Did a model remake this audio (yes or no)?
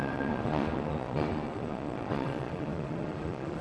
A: yes